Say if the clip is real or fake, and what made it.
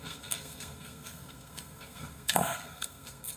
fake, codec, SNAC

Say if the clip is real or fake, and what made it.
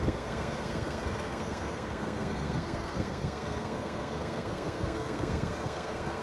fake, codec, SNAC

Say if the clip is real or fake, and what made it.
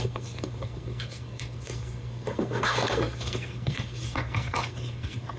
fake, codec, SNAC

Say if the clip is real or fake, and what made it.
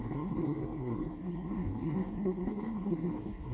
fake, codec, SNAC